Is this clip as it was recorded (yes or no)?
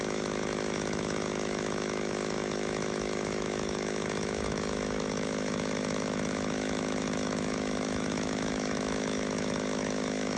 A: no